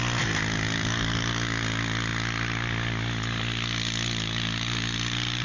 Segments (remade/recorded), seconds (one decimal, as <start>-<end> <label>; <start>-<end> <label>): 0.0-5.4 recorded